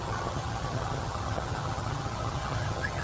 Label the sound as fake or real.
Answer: fake